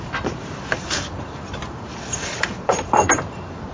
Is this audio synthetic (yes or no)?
yes